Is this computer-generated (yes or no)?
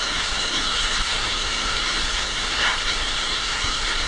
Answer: yes